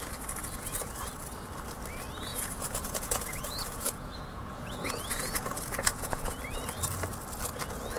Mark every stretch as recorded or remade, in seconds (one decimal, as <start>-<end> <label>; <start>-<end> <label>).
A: 0.0-0.4 recorded; 0.4-0.9 remade; 0.9-2.3 recorded; 2.3-6.4 remade; 6.4-8.0 recorded